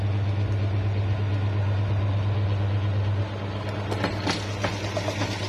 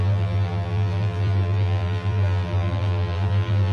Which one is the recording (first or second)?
first